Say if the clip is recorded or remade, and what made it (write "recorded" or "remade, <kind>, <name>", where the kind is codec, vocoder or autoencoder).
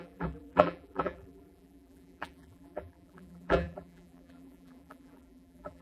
remade, vocoder, BigVGAN v2